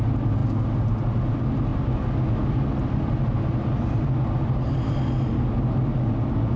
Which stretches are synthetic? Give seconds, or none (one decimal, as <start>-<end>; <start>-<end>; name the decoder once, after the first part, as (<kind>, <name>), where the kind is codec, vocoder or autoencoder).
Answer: none